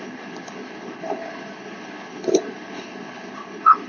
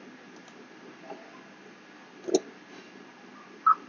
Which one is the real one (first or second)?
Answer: second